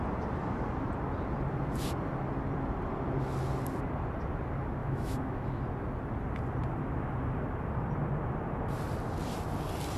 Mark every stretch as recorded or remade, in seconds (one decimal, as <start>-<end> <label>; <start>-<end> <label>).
0.0-4.8 recorded; 4.8-5.6 remade; 5.6-10.0 recorded